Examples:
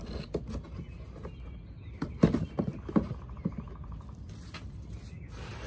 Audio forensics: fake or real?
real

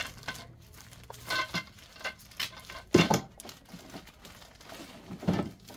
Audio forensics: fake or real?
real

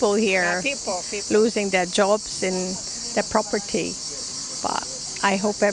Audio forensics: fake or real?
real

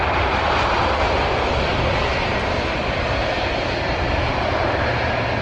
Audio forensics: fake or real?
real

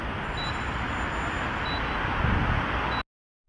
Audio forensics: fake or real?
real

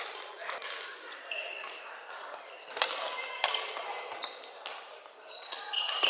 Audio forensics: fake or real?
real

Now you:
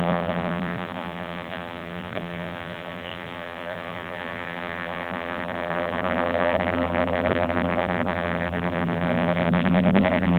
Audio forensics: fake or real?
fake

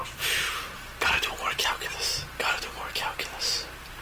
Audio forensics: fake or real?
fake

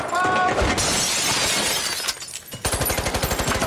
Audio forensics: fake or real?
real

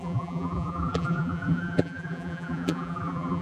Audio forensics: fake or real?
fake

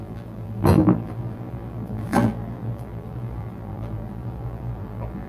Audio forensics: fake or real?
fake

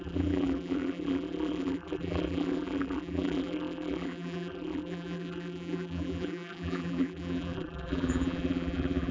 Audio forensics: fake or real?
fake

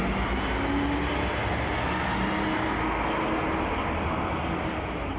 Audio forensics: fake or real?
real